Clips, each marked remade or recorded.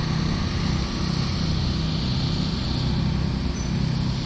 recorded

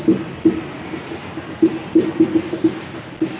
recorded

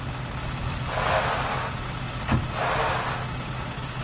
recorded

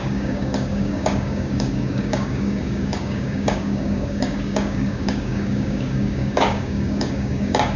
remade